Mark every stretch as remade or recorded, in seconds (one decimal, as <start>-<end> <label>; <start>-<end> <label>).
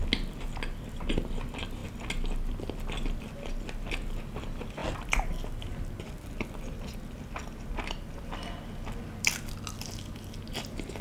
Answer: 0.0-11.0 recorded